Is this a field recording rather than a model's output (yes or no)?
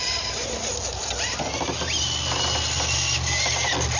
yes